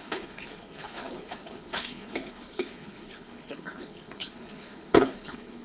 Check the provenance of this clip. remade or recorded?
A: remade